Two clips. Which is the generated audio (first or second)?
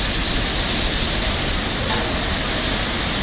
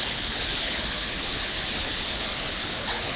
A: second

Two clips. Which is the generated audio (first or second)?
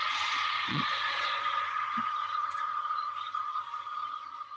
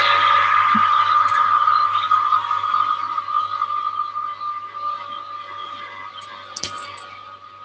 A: first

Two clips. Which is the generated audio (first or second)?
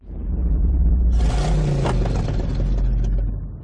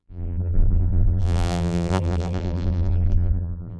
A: second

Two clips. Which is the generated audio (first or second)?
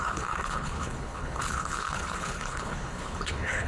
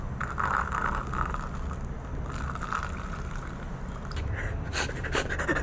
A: first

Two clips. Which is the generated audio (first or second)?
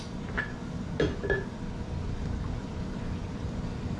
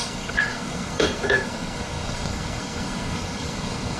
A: second